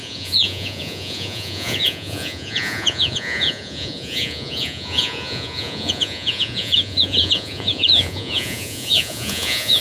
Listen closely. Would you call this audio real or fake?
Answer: fake